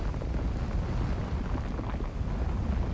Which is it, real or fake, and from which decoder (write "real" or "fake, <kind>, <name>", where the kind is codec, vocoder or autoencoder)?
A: real